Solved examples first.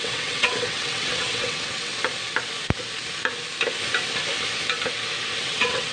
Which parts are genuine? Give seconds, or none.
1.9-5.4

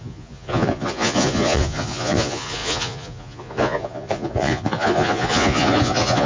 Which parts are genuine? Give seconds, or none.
none

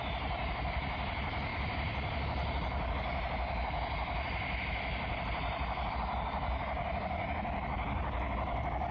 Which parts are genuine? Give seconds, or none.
0.0-8.9

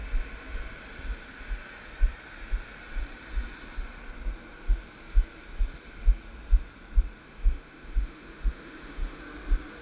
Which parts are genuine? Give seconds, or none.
0.0-7.2; 9.2-9.8

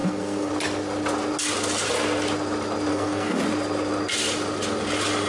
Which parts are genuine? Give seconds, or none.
0.5-2.9; 3.4-5.3

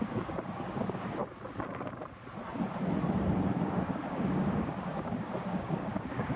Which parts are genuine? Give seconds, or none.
1.2-3.5

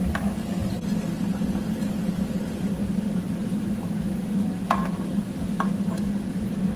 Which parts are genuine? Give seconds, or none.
0.0-6.8